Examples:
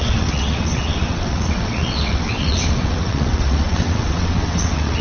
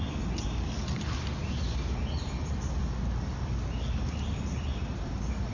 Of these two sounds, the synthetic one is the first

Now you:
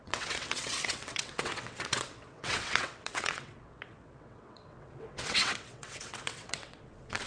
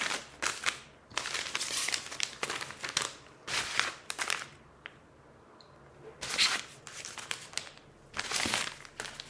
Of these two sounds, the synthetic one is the first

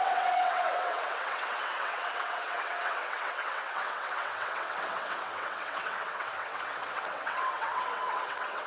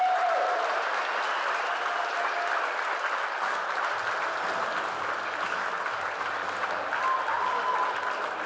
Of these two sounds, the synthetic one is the first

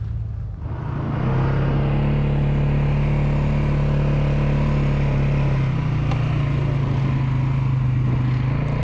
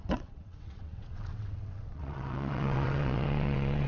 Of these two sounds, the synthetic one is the second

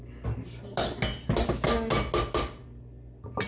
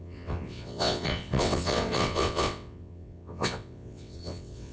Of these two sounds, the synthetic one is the second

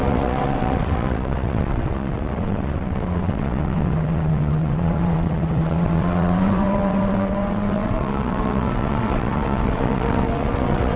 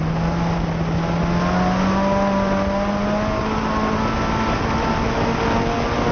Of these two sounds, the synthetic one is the first